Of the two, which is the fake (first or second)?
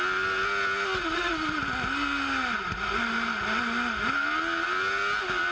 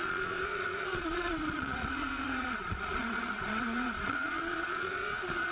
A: second